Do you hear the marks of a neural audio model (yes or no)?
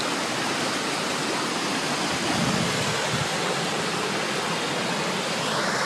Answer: no